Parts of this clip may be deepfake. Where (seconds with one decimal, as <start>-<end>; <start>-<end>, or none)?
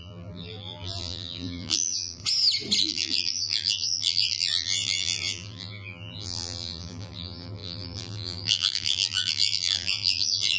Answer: 0.0-2.2; 2.8-10.6